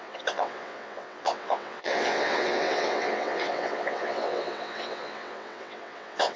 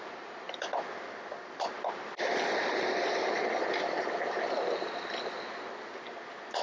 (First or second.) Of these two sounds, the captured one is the second